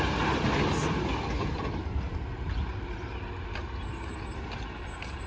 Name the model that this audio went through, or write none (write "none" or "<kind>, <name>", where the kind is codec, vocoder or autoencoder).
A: none